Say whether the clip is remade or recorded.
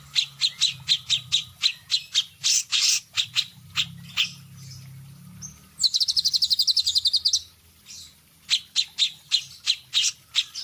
recorded